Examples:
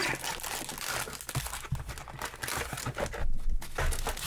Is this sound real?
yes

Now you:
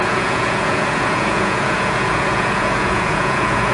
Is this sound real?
no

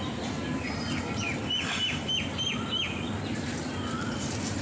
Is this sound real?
yes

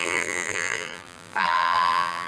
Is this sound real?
no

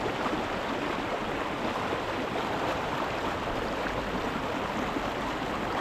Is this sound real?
yes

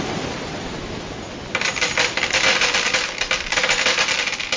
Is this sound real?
yes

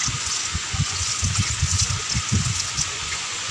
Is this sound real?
no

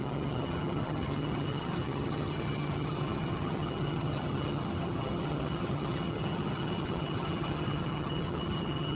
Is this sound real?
no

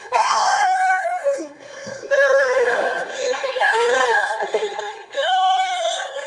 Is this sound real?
no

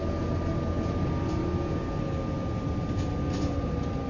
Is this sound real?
yes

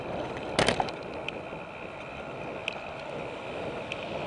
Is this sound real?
yes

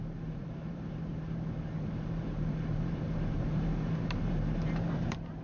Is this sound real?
no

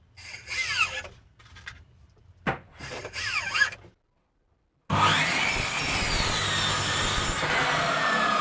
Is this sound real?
yes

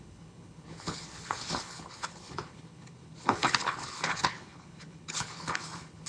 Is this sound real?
no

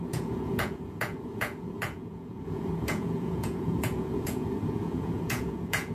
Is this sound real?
no